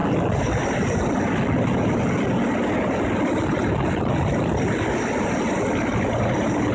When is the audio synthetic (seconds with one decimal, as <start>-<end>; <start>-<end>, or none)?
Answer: none

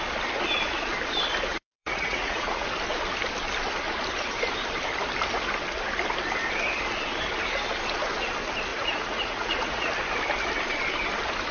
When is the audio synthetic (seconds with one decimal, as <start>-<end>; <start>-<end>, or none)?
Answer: 1.5-2.7; 8.7-9.9